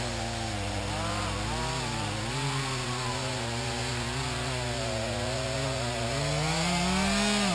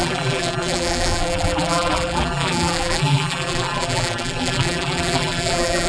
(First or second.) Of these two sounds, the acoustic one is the first